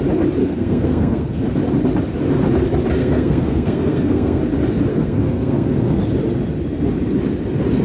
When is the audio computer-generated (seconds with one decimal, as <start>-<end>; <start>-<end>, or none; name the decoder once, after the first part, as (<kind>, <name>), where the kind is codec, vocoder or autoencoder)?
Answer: 0.4-1.4 (codec, SNAC); 3.0-4.4; 4.9-6.0